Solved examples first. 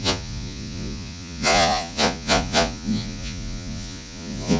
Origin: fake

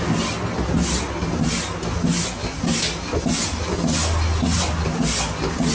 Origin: real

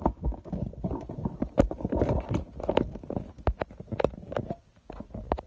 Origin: real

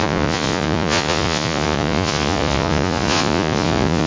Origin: fake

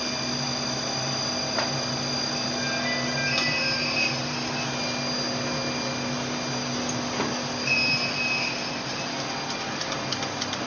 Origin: real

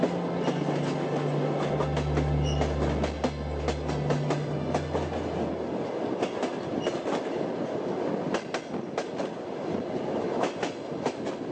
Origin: real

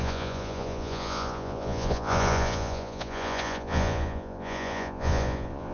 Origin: fake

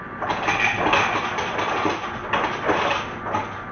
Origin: real